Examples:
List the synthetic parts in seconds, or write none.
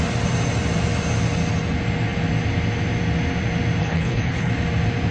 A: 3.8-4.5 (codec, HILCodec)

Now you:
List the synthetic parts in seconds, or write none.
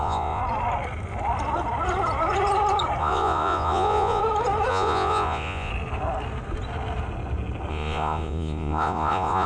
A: 0.0-0.4 (vocoder, Vocos); 3.0-4.2; 4.7-5.7; 7.7-9.5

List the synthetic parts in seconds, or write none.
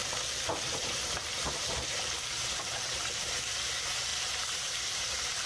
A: 1.4-5.5 (vocoder, BigVGAN v2)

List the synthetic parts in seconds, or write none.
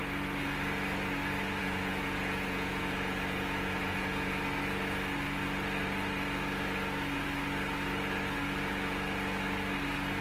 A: 1.6-4.4 (vocoder, Vocos)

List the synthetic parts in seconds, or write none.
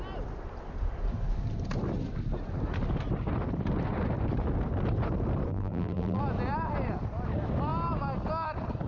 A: 5.5-6.2 (vocoder, BigVGAN v2)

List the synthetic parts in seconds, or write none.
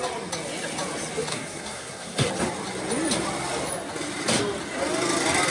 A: 1.3-2.3 (codec, SNAC)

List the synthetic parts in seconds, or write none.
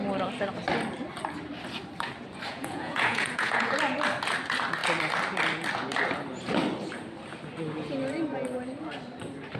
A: 2.5-3.7 (vocoder, Vocos)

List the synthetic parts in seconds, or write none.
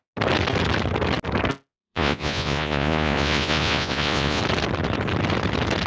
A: 1.7-4.4 (vocoder, Vocos)